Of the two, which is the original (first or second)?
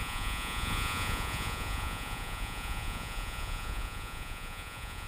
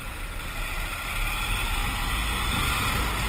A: second